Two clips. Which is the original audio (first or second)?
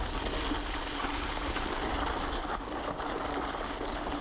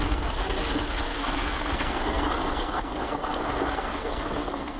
first